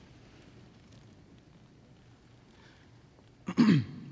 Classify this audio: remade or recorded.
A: recorded